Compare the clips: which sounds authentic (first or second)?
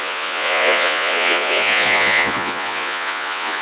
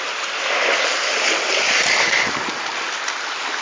second